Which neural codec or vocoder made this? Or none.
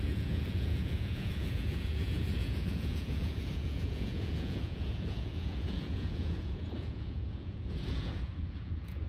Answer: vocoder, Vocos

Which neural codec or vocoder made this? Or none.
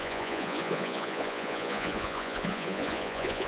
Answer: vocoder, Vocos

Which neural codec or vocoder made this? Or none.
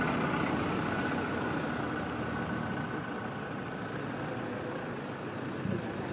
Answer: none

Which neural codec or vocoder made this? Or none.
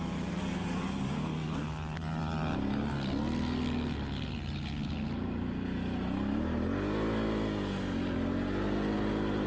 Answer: none